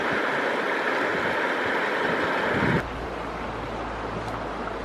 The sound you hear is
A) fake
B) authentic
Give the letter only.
B